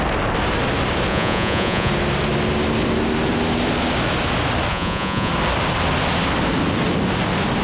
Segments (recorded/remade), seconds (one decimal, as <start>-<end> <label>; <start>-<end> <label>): 0.0-1.1 recorded; 1.1-1.9 remade; 1.9-4.7 recorded; 4.7-5.3 remade; 5.3-7.6 recorded